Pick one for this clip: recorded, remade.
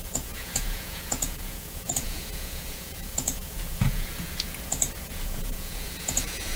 remade